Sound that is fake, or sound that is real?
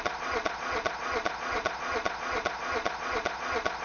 fake